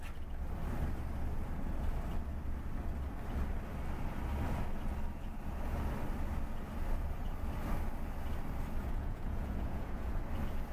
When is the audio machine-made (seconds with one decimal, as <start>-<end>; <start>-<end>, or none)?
8.8-10.2